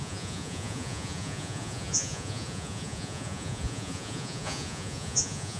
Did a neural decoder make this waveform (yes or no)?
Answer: yes